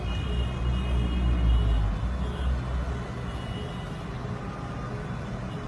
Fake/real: real